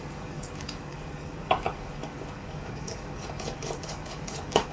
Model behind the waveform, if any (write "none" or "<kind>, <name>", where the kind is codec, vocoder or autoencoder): codec, DAC